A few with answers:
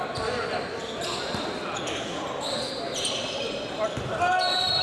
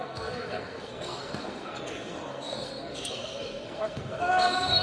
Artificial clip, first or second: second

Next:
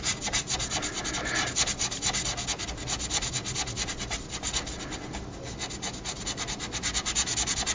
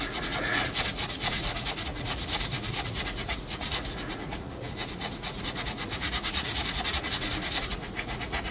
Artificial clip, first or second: second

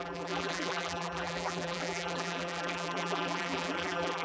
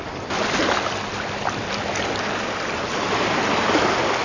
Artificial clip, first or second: first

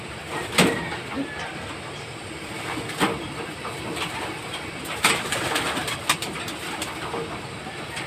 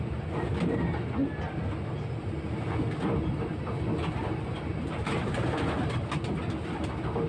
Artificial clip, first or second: first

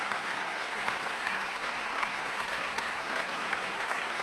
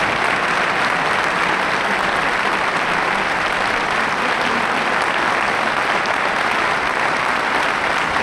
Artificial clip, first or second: first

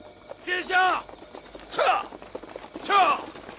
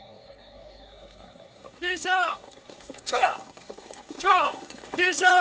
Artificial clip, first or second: second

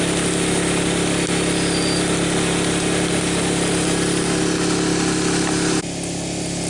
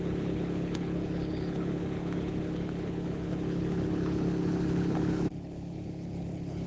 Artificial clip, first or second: second